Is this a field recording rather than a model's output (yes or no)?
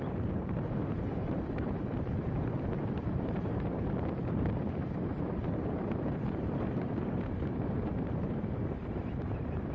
no